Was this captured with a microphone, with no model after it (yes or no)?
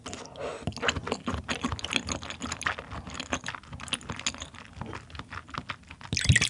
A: yes